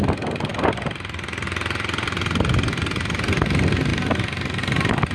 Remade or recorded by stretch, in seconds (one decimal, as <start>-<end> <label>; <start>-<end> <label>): 0.0-5.1 recorded